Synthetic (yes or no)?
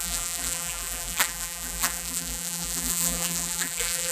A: yes